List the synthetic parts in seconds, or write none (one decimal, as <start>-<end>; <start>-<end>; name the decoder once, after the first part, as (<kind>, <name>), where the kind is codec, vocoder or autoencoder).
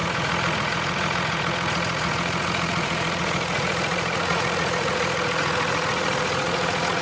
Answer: 0.0-7.0 (vocoder, Vocos)